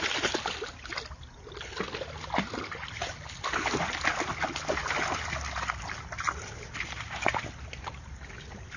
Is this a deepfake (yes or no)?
no